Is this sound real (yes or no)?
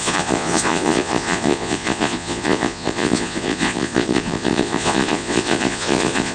no